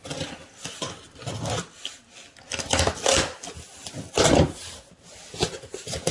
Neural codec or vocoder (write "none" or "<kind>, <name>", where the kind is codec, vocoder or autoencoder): none